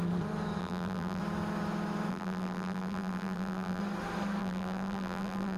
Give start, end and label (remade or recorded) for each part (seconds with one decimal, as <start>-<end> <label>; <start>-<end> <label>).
0.0-0.6 recorded; 0.6-1.2 remade; 1.2-2.1 recorded; 2.1-3.8 remade; 3.8-4.4 recorded; 4.4-5.6 remade